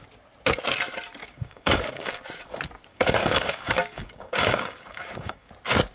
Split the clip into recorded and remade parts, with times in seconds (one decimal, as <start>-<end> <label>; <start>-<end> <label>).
0.0-1.2 recorded; 1.2-2.2 remade; 2.2-2.9 recorded; 2.9-5.5 remade; 5.5-5.9 recorded